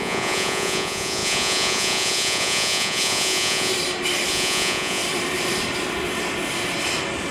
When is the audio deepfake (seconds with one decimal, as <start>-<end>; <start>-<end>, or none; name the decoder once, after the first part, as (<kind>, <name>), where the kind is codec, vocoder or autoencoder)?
0.0-3.7 (vocoder, Vocos); 4.3-5.0